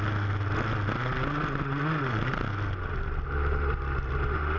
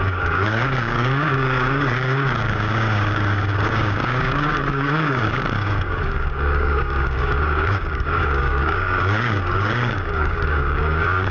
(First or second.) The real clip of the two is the first